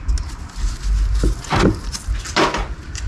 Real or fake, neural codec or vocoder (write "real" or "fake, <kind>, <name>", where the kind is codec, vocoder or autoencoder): real